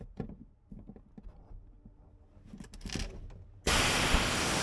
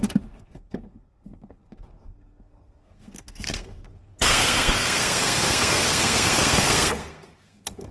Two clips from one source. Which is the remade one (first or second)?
second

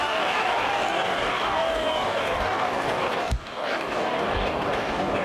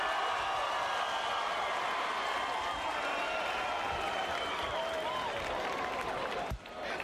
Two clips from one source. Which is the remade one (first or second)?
first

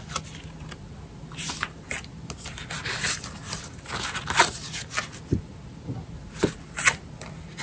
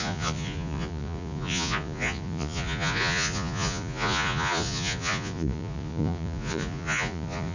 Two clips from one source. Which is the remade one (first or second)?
second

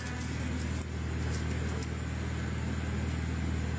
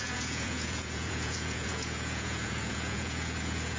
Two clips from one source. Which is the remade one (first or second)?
second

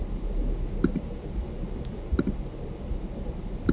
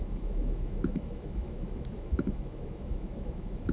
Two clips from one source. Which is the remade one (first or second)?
second